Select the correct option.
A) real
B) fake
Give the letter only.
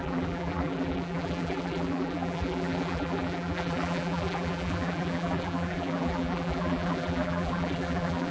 B